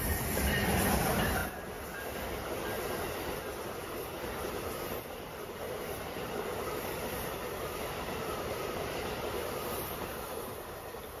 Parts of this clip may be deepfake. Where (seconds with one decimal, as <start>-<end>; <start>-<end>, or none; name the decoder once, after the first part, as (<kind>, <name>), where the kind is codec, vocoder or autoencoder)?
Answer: 0.0-11.2 (vocoder, BigVGAN v2)